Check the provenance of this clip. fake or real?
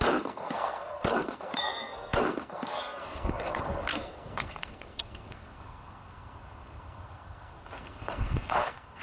fake